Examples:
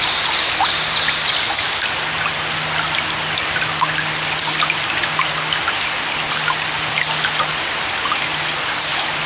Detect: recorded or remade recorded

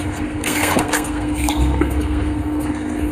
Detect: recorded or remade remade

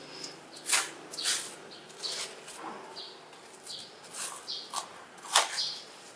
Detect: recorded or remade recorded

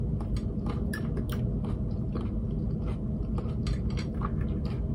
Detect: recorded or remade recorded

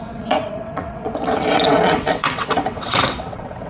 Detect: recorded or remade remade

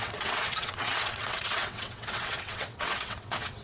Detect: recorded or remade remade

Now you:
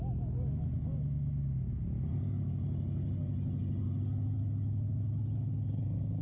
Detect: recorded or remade recorded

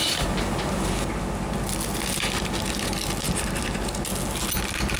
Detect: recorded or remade recorded